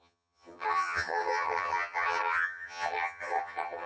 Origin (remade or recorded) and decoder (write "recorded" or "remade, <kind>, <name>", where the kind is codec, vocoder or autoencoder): remade, vocoder, HiFi-GAN